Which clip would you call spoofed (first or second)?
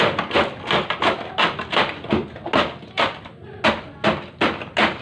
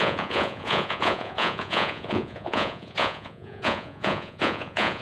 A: second